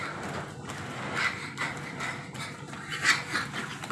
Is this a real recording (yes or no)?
yes